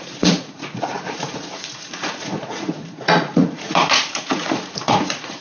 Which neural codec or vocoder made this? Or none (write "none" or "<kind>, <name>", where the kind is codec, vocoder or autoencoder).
vocoder, Vocos